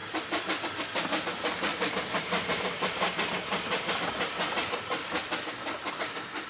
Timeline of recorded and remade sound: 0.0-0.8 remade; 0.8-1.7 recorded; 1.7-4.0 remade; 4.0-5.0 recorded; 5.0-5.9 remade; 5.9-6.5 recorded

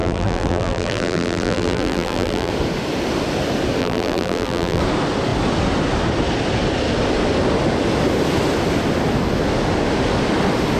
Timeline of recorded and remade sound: 0.0-2.5 remade; 2.5-3.8 recorded; 3.8-4.8 remade; 4.8-10.8 recorded